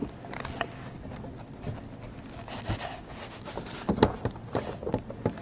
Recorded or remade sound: recorded